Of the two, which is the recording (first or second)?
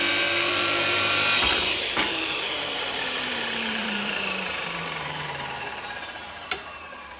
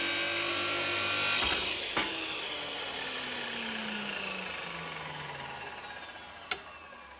second